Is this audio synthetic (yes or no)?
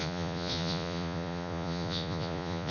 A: yes